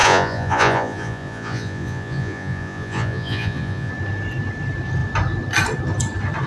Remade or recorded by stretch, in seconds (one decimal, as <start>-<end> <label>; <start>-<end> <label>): 0.0-3.9 remade; 3.9-6.5 recorded